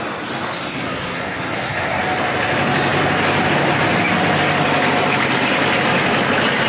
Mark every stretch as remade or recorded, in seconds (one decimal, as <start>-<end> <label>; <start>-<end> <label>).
0.0-0.6 recorded; 0.6-2.0 remade; 2.0-6.7 recorded